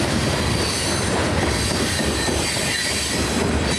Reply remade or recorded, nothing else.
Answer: recorded